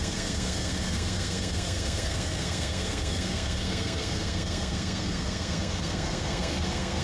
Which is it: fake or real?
fake